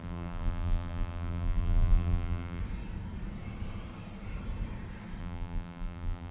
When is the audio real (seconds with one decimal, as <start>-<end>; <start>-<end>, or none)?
2.6-5.2